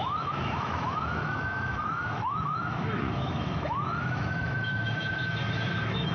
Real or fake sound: fake